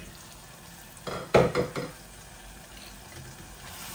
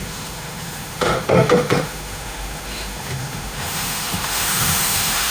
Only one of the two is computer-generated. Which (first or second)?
second